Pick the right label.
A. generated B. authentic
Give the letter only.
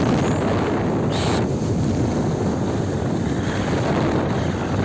B